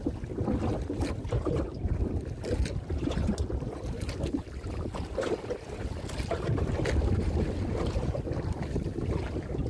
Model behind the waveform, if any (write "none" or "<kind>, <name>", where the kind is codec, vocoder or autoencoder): none